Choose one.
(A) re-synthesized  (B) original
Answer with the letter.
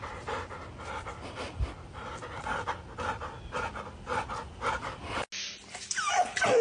B